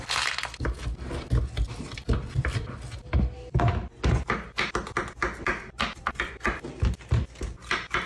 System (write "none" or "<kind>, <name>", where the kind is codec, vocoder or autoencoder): none